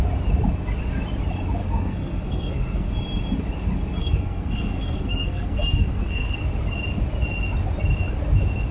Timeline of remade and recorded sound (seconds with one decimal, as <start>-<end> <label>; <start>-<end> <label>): 0.0-1.6 recorded; 1.6-2.9 remade; 2.9-4.0 recorded; 4.0-6.4 remade; 6.4-8.7 recorded

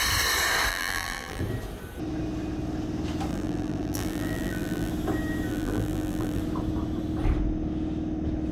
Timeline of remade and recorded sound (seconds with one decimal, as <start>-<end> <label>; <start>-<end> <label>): 0.0-0.7 recorded; 0.7-1.4 remade; 1.4-3.3 recorded; 3.3-4.9 remade; 4.9-5.5 recorded; 5.5-6.4 remade; 6.4-8.5 recorded

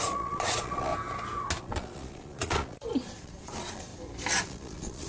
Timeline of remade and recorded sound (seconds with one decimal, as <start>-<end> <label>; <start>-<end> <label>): 0.0-0.9 remade; 0.9-1.6 recorded; 1.6-3.9 remade; 3.9-4.4 recorded; 4.4-5.1 remade

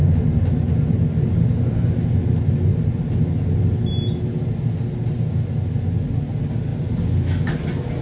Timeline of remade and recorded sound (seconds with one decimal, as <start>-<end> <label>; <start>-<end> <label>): 0.0-8.0 recorded

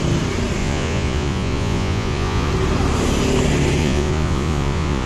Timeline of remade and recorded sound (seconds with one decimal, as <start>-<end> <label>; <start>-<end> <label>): 0.0-0.6 recorded; 0.6-2.5 remade; 2.5-3.8 recorded; 3.8-5.1 remade

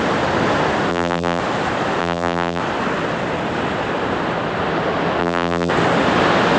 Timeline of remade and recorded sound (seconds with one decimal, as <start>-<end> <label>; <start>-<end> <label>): 0.0-0.9 recorded; 0.9-1.4 remade; 1.4-2.0 recorded; 2.0-2.6 remade; 2.6-5.2 recorded; 5.2-5.7 remade; 5.7-6.6 recorded

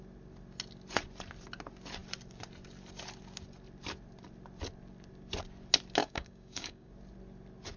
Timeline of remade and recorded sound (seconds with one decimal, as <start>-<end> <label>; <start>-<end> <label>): 0.0-6.0 recorded; 6.0-6.9 remade; 6.9-7.8 recorded

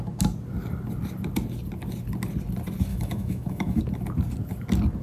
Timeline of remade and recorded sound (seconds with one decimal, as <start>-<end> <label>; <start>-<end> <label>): 0.0-2.9 recorded; 2.9-3.8 remade; 3.8-5.0 recorded